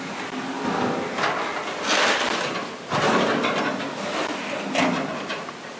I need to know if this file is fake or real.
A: real